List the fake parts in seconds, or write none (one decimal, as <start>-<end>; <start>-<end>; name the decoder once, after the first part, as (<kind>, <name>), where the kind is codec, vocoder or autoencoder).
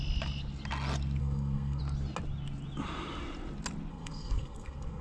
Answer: 1.2-1.8 (codec, SNAC); 3.9-5.0